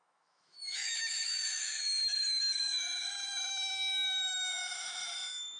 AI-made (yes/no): yes